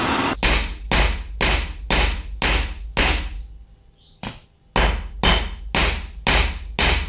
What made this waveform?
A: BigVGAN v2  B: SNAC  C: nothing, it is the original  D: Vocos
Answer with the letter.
C